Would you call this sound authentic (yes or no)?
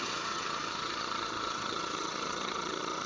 no